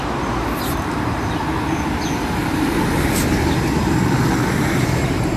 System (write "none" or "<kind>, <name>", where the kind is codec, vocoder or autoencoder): none